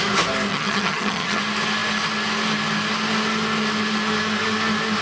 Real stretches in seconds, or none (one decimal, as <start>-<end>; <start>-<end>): 0.0-0.5; 1.4-5.0

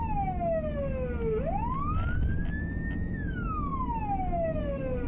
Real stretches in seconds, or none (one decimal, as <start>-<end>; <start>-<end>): 0.0-5.1